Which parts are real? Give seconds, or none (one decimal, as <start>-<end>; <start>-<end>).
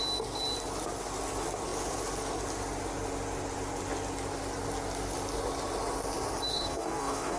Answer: 0.0-6.5